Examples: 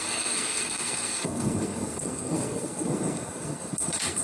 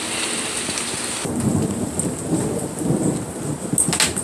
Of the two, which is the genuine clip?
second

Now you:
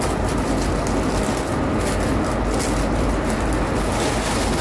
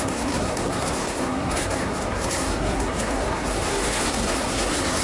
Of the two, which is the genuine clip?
first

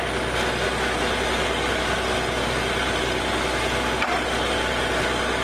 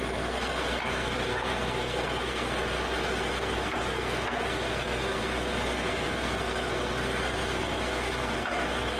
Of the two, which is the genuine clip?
first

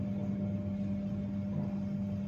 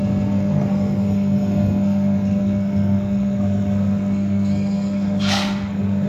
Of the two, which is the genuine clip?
first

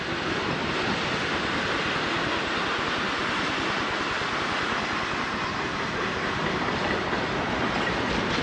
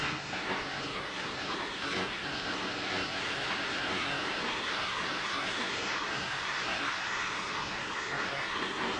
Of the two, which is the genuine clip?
first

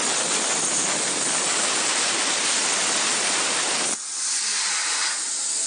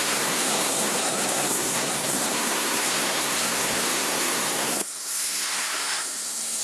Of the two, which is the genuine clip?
first